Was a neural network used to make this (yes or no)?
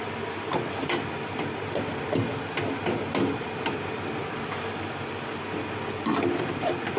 no